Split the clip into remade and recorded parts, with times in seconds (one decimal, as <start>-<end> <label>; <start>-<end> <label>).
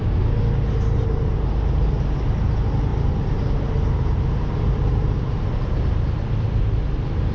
0.0-7.3 recorded